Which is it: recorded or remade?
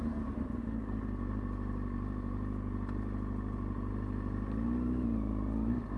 recorded